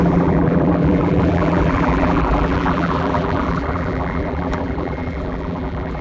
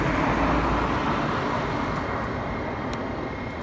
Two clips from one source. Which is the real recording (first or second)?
second